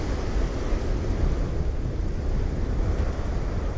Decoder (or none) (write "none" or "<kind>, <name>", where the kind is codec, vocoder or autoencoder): none